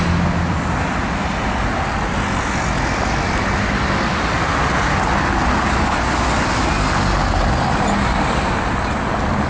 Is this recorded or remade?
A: recorded